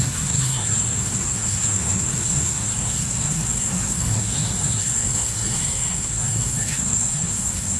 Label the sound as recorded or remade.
remade